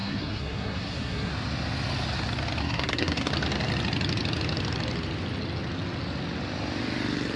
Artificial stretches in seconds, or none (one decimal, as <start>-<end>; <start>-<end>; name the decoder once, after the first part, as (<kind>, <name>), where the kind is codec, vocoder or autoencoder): 0.0-1.3 (codec, SNAC); 2.6-3.3